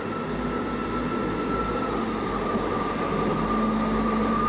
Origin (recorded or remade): recorded